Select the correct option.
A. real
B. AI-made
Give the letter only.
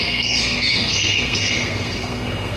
B